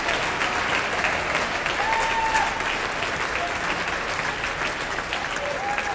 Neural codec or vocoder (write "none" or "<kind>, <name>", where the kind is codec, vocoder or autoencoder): none